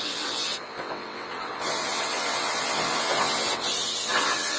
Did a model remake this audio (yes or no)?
yes